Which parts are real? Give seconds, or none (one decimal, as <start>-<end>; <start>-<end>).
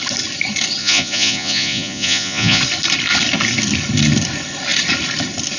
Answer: 0.0-0.8; 2.6-5.6